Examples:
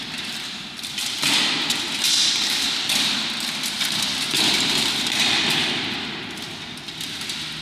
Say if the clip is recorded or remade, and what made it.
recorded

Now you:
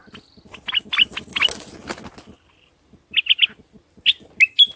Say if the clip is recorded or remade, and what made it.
recorded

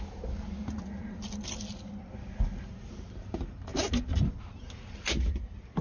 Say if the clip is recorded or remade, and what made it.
recorded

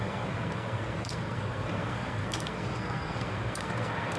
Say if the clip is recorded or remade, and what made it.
remade, codec, SNAC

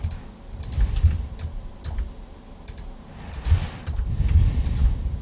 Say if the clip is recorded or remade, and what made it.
recorded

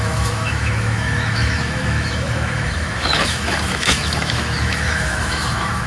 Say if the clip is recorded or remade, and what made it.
remade, autoencoder, DAC-VAE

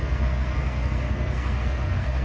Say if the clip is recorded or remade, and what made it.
remade, codec, SNAC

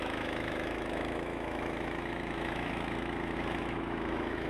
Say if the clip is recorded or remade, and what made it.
remade, autoencoder, DAC-VAE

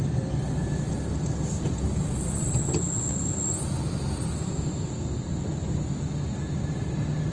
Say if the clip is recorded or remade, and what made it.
recorded